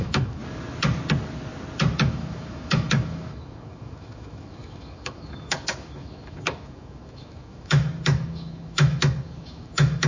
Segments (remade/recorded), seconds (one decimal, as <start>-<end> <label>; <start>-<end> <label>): 0.0-0.4 remade; 0.4-2.0 recorded; 2.0-10.1 remade